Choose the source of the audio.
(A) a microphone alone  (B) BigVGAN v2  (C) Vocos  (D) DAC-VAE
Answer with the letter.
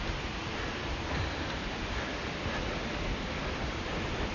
A